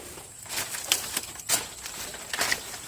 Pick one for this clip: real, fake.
real